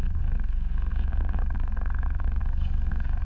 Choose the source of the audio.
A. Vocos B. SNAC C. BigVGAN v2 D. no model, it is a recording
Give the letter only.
B